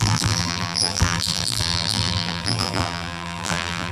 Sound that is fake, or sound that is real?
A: fake